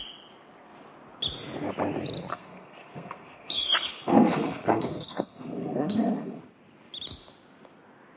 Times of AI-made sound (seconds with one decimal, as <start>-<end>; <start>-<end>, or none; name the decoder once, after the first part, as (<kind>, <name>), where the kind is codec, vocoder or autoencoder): 2.3-6.4 (codec, SNAC)